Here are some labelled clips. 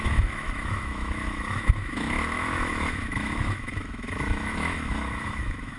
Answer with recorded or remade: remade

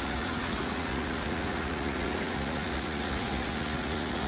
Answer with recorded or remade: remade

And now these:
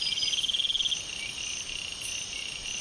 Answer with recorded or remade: recorded